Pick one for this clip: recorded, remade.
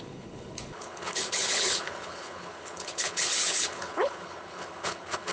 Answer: remade